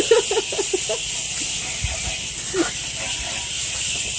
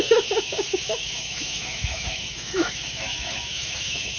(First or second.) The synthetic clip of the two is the second